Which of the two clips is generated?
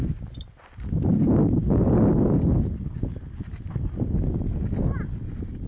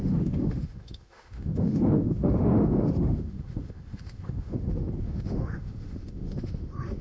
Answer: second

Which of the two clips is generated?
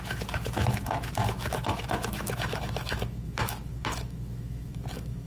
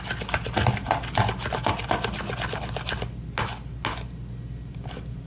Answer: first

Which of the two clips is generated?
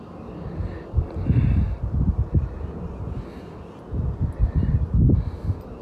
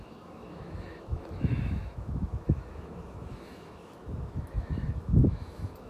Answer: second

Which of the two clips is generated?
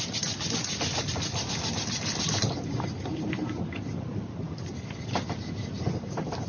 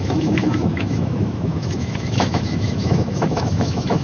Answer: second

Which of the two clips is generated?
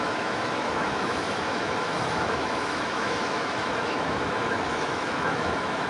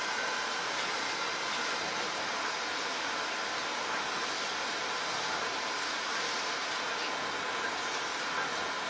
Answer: first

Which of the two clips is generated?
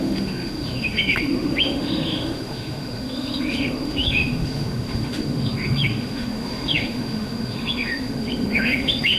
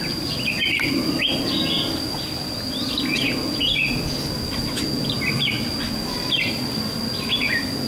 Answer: first